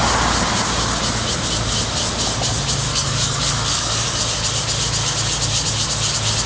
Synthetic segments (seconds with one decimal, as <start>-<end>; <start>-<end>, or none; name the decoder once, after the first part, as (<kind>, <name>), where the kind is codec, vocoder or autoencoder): 2.9-4.2 (codec, DAC)